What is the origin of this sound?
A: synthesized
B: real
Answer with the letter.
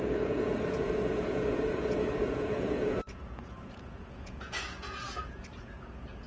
A